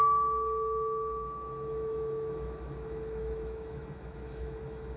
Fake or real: fake